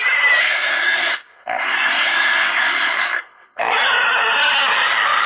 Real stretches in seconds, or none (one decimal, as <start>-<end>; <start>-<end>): 0.0-0.4; 3.6-5.3